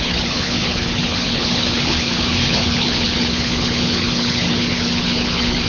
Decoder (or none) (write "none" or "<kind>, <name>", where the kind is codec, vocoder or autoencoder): codec, HILCodec